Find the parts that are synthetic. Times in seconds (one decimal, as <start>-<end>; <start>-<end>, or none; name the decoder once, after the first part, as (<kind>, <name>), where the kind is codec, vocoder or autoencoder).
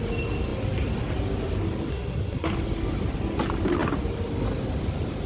1.9-2.5 (codec, SNAC)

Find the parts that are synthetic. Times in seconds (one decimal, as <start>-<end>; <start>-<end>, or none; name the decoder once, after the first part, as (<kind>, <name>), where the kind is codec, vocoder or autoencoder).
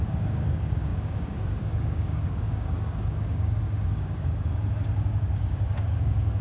0.0-6.4 (codec, DAC)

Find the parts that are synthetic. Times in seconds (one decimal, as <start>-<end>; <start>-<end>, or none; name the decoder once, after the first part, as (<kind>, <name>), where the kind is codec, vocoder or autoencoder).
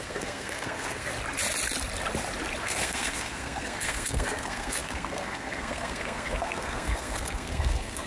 0.0-1.1 (codec, SNAC); 2.6-8.1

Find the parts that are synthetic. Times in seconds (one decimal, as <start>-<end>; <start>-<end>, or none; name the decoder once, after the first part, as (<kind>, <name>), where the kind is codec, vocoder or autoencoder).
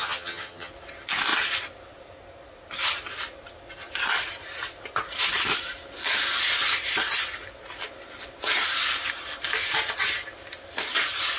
0.0-0.7 (vocoder, HiFi-GAN)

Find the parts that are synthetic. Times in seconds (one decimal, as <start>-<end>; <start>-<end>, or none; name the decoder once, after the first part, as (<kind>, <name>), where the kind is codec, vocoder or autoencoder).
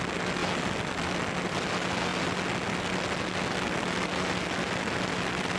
none